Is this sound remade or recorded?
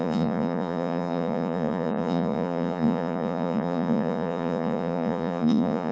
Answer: remade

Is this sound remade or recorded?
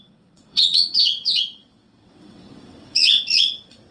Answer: remade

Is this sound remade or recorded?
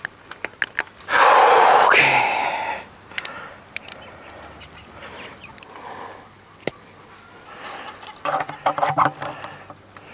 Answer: recorded